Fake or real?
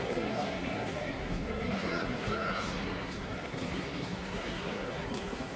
fake